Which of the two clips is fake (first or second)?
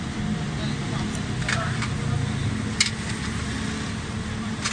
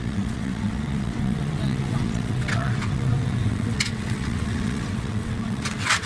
second